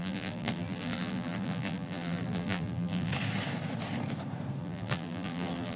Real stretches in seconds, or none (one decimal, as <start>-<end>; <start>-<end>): 3.1-4.6